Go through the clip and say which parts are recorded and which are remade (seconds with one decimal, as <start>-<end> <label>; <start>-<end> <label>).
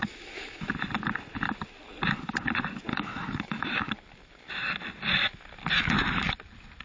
0.0-0.7 remade; 0.7-2.9 recorded; 2.9-3.9 remade; 3.9-6.8 recorded